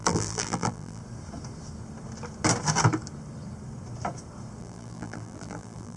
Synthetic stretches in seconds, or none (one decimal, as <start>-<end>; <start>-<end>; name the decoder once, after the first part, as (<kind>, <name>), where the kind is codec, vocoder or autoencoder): 0.0-1.0 (vocoder, BigVGAN v2); 4.6-6.0